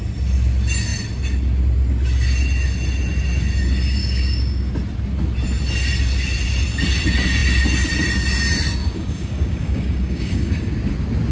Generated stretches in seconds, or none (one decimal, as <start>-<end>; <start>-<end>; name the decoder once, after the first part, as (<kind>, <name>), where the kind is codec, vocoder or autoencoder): 4.0-4.7 (codec, DAC); 8.8-10.7